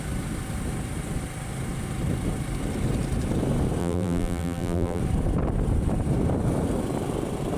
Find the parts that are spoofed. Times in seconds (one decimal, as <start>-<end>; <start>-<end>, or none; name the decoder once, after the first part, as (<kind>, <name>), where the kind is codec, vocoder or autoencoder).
3.8-5.0 (vocoder, BigVGAN v2)